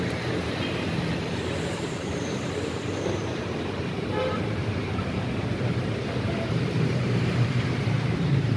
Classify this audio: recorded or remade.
remade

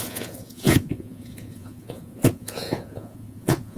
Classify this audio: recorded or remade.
remade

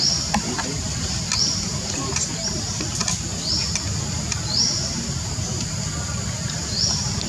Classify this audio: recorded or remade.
remade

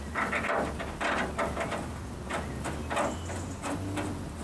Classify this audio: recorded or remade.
recorded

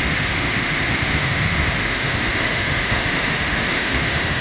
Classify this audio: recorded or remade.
remade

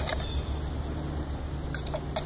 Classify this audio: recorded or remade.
recorded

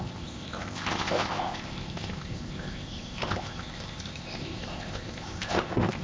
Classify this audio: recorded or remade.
remade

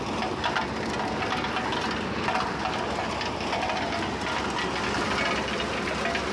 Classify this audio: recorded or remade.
recorded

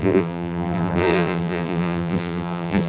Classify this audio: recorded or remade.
remade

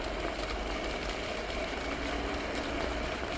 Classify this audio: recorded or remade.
recorded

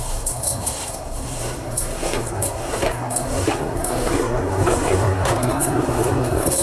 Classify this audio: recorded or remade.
remade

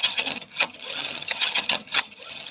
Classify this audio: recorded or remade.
remade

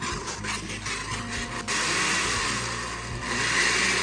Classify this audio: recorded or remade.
recorded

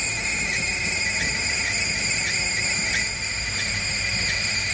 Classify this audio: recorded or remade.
recorded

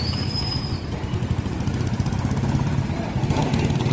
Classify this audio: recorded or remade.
recorded